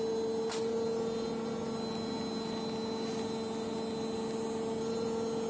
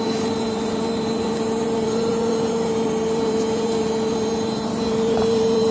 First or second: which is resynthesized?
second